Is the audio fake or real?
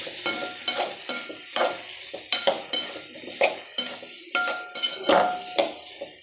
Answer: real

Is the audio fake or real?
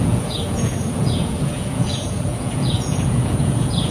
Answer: fake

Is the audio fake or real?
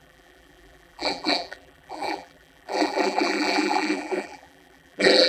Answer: fake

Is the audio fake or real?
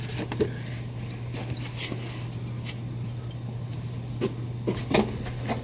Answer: real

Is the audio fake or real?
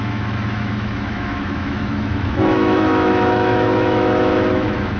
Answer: fake